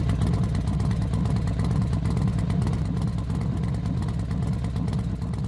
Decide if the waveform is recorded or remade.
recorded